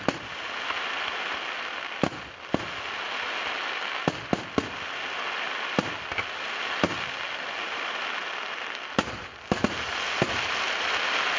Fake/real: real